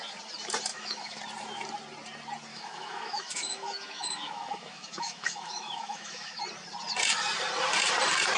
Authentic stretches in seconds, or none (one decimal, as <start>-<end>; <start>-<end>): 0.0-0.7; 1.2-2.5; 6.4-8.4